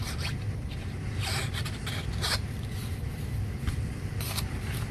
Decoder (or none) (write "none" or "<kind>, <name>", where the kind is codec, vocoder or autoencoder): vocoder, BigVGAN v2